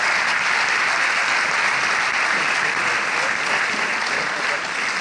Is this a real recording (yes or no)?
yes